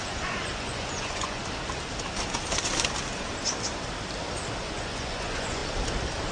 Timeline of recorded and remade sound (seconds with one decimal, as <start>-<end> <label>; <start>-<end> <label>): 0.0-1.4 remade; 1.4-4.6 recorded; 4.6-5.6 remade; 5.6-6.3 recorded